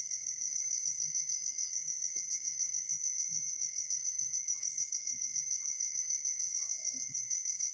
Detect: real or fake fake